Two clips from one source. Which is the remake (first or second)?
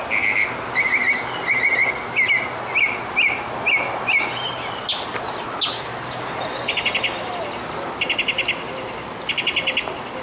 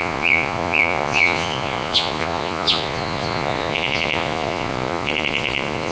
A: second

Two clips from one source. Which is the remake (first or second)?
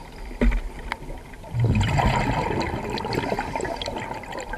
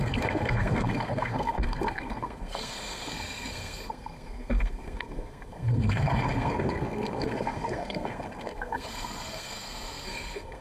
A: second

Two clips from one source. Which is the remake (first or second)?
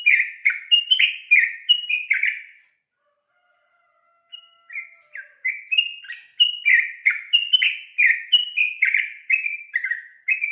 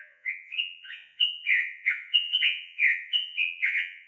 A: second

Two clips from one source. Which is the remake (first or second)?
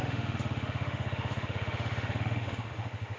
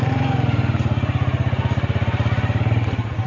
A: first